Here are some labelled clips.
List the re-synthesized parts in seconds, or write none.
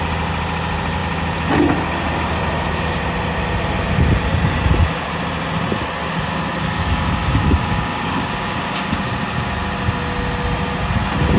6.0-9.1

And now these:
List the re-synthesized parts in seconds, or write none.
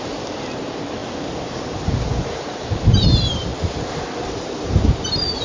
0.0-1.0; 1.8-3.5; 4.2-5.4